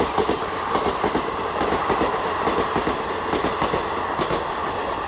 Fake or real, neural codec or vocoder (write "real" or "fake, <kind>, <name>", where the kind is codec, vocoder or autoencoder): real